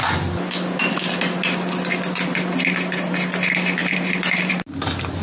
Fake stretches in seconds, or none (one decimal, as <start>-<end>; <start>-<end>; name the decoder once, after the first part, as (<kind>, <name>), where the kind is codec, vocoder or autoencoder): 3.8-4.5 (vocoder, BigVGAN v2)